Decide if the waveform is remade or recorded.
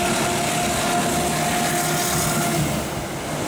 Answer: recorded